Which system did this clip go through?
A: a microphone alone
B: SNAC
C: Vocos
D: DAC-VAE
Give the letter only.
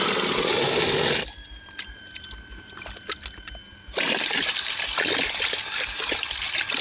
A